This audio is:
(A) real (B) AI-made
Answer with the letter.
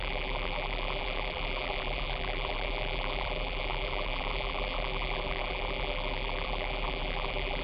B